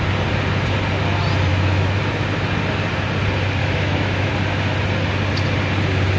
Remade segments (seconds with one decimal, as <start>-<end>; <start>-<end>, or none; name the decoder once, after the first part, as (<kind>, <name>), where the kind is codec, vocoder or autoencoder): 1.5-2.0 (autoencoder, DAC-VAE); 3.6-4.3